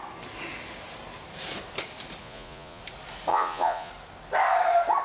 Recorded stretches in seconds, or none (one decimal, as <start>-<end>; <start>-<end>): 0.0-2.2; 2.8-3.3; 3.9-5.0

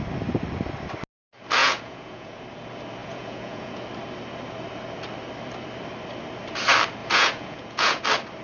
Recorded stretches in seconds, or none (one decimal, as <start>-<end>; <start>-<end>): 0.0-1.6; 2.4-3.0; 3.8-7.0; 8.0-8.4

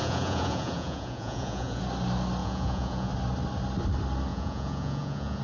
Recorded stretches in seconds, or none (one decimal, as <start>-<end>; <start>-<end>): 1.8-2.4; 3.1-4.3